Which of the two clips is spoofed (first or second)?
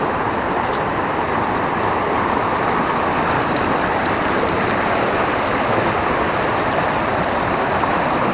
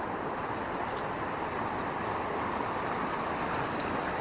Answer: second